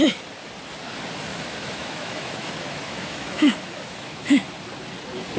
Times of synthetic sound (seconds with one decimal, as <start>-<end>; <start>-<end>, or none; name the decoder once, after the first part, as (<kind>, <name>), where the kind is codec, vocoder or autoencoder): 1.3-4.5 (autoencoder, DAC-VAE)